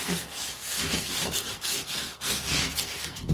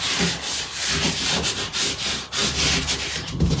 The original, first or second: second